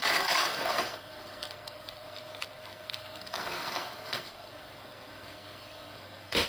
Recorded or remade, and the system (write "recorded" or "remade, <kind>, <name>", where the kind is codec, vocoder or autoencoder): remade, codec, SNAC